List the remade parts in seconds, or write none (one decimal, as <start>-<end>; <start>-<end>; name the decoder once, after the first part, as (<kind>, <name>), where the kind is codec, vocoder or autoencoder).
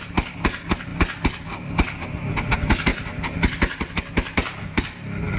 none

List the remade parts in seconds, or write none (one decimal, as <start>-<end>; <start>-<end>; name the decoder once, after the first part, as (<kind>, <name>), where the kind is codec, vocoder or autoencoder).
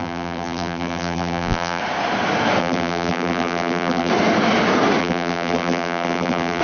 0.0-1.8 (vocoder, BigVGAN v2); 2.6-4.1; 5.0-6.6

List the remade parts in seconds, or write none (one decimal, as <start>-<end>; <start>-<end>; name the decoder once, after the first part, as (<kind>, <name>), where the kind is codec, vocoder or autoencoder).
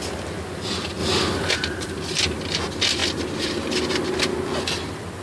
none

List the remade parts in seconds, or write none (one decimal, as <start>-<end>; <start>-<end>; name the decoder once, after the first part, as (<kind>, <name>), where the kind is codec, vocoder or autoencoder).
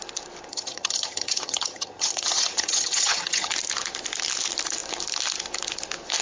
0.5-3.5 (vocoder, HiFi-GAN)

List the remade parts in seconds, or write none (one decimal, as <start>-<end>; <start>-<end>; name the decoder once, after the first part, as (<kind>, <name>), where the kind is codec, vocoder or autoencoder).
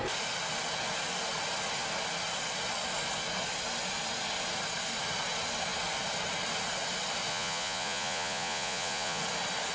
7.3-9.2 (vocoder, Vocos)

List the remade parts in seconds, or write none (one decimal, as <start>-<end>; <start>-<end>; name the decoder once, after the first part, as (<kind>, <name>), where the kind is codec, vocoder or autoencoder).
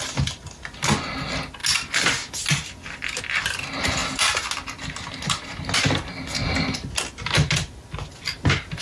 none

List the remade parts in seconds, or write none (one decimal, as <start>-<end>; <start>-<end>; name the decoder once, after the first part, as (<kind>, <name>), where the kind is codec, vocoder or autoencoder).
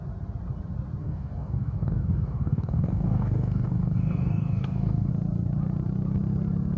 1.0-5.1 (codec, DAC)